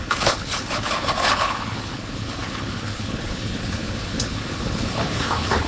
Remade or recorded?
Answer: remade